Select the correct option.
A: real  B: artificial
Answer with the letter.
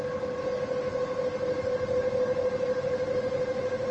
A